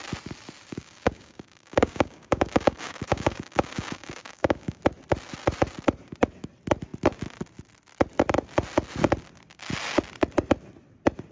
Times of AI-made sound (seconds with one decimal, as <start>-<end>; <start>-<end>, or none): 0.7-4.8

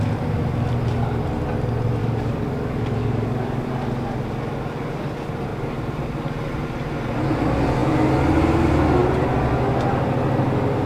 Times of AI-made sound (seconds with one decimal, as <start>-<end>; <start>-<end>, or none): 2.0-3.7